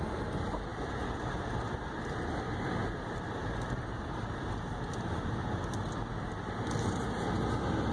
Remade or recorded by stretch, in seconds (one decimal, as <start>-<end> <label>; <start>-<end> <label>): 0.0-7.9 recorded